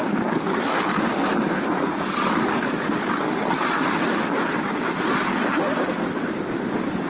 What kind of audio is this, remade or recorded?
recorded